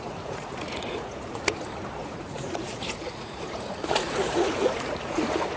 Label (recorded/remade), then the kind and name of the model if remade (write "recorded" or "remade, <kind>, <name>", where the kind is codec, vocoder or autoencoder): remade, vocoder, Vocos